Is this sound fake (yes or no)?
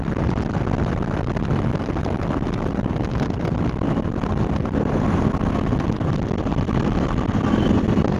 no